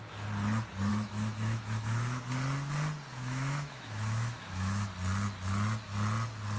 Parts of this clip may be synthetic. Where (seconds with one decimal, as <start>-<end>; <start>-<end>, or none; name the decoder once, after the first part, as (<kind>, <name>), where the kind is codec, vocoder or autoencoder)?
0.9-2.2 (autoencoder, DAC-VAE); 3.1-4.9